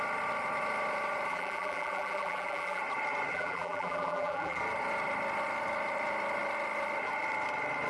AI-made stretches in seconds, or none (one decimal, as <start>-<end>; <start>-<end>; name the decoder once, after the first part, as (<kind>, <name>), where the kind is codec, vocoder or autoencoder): 1.3-2.8 (vocoder, BigVGAN v2); 3.3-4.6